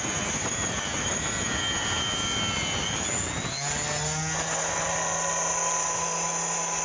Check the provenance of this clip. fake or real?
real